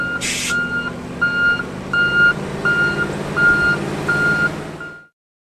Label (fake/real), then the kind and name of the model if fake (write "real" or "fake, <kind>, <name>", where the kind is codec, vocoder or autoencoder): real